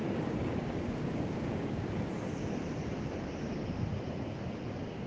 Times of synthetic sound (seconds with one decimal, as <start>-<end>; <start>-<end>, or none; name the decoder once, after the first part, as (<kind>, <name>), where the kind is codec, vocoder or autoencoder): 0.0-2.1 (codec, DAC)